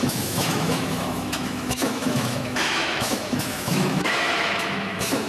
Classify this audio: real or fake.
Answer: fake